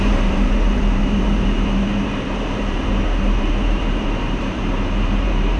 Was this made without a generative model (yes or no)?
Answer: no